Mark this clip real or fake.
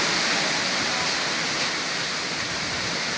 real